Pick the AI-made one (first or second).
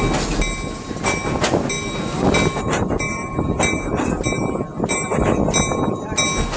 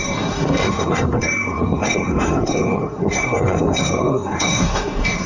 second